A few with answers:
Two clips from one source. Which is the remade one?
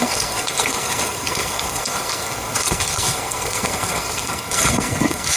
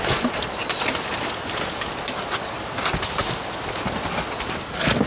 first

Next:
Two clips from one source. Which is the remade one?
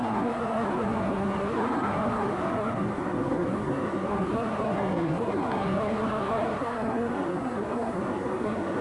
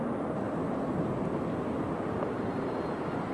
first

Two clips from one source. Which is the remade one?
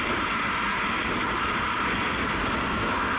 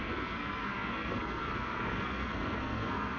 second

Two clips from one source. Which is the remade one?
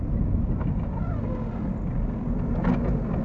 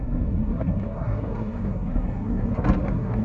second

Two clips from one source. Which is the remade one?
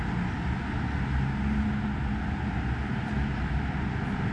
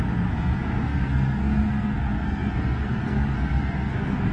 second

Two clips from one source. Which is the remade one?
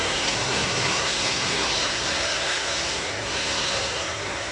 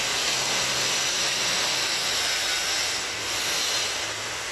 first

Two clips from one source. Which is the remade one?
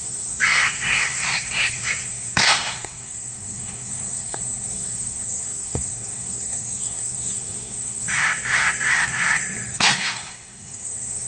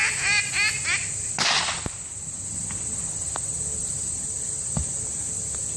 first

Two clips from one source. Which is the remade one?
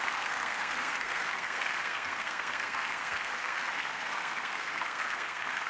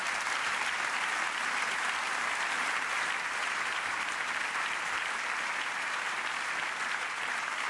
first